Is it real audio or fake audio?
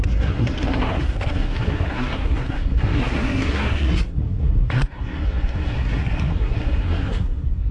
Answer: fake